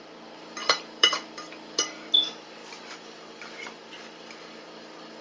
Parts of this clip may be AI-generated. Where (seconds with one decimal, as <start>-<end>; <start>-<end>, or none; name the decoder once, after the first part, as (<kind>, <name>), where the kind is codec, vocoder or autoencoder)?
0.6-2.1 (vocoder, BigVGAN v2)